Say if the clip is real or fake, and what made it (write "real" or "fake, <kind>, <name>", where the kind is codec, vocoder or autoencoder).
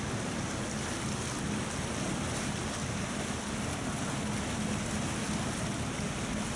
real